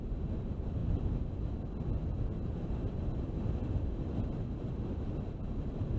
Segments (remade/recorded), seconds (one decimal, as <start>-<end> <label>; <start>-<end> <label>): 0.0-6.0 recorded